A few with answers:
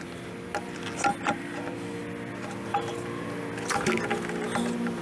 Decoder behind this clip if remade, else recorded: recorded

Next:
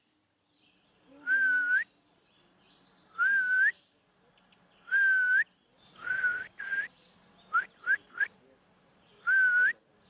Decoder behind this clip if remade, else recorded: recorded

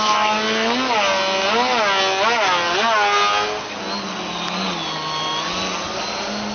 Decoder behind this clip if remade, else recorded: recorded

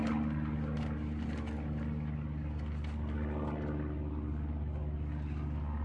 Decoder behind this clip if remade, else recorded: recorded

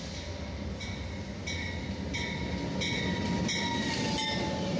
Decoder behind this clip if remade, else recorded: recorded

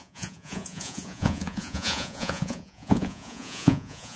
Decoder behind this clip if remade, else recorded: remade, vocoder, Vocos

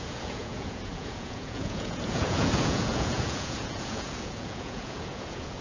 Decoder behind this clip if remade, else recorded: remade, vocoder, Vocos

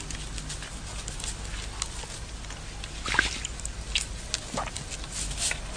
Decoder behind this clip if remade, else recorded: recorded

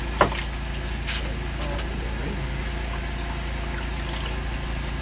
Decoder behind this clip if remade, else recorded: recorded